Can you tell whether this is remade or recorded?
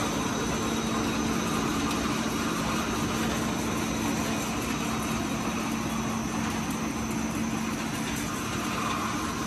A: recorded